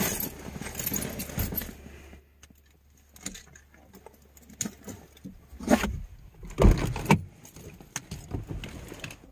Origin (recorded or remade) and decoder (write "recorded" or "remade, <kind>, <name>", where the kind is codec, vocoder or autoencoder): recorded